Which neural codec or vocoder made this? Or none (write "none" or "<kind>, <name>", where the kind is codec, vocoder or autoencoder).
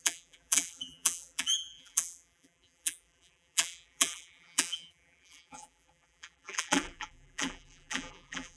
vocoder, BigVGAN v2